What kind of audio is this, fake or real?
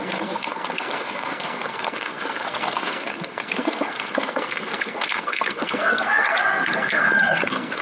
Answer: fake